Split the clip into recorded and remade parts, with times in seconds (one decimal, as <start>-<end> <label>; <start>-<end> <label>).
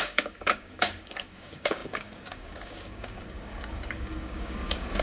0.0-5.0 remade